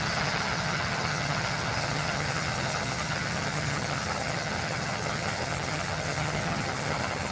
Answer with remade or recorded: remade